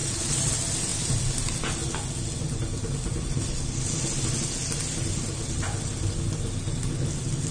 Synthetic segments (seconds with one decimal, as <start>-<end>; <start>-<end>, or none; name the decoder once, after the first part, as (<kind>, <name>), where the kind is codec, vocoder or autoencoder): 0.0-0.5 (vocoder, Vocos)